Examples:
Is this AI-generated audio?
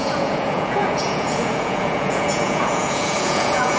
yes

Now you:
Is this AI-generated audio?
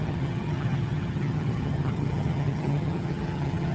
yes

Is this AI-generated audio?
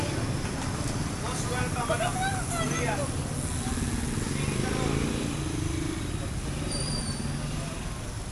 no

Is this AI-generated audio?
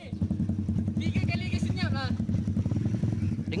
no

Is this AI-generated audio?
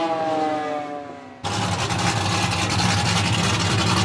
no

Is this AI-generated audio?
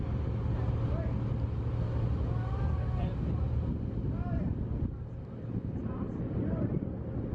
no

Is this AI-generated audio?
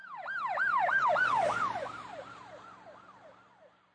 yes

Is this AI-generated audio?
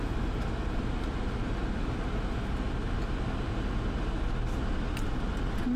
no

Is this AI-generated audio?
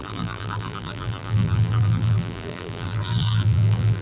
yes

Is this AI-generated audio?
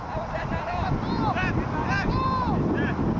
no